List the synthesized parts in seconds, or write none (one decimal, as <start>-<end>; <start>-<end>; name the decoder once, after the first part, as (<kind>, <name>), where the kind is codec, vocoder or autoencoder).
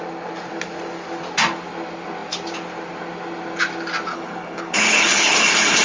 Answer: 4.1-5.8 (codec, HILCodec)